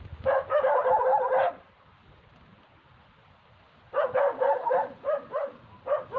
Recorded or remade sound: recorded